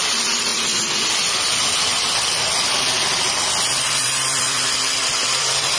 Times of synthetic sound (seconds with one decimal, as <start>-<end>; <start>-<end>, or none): 0.0-0.5; 1.5-5.8